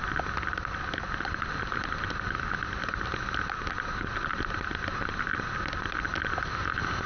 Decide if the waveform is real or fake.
real